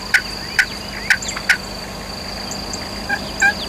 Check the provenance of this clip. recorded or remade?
recorded